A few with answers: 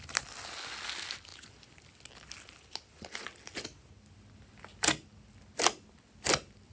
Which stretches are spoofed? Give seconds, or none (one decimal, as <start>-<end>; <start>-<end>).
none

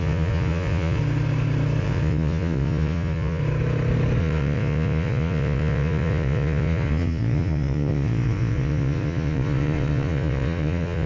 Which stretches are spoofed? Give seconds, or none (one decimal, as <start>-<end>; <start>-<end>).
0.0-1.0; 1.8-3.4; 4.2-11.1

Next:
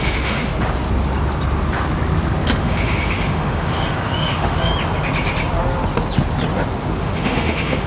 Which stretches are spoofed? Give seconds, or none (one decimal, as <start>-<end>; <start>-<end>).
0.0-0.5; 2.6-4.7; 7.0-7.9

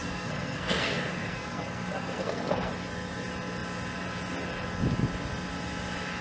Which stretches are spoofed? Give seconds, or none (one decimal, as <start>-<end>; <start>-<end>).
0.0-2.7

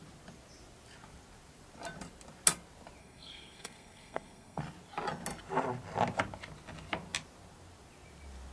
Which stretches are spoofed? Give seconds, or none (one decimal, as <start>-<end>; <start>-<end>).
3.0-4.6

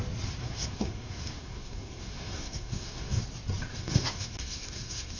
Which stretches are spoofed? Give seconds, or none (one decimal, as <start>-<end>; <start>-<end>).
0.4-3.2; 3.7-5.2

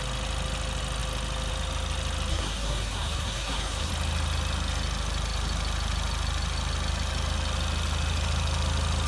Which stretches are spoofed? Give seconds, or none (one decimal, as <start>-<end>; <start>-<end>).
2.3-3.9